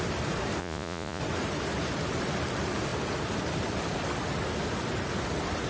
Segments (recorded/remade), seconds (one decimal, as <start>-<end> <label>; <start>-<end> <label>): 0.0-0.6 recorded; 0.6-1.2 remade; 1.2-5.7 recorded